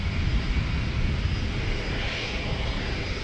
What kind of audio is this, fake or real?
real